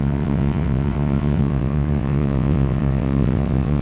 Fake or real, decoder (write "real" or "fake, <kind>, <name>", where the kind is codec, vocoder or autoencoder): fake, vocoder, WaveNeXt